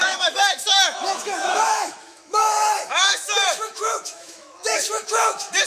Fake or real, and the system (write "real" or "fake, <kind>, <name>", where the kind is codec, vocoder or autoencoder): fake, autoencoder, DAC-VAE